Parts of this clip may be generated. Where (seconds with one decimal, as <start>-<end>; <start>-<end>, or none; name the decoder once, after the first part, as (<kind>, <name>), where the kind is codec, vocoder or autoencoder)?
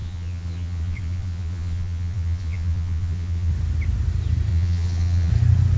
0.0-3.5 (vocoder, Vocos); 4.5-5.3